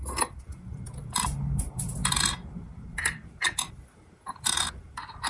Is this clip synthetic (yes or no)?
no